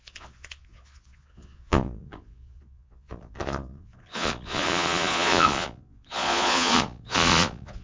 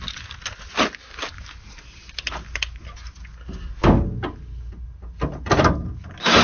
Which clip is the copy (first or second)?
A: first